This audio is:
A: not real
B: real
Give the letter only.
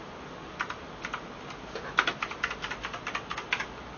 B